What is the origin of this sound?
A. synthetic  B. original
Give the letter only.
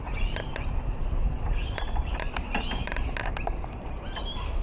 B